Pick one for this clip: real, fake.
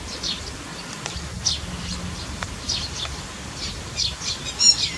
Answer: real